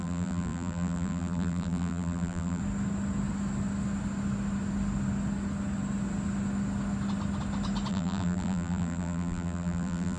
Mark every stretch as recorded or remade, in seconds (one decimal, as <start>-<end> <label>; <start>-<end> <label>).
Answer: 0.0-2.6 remade; 2.6-7.9 recorded; 7.9-10.2 remade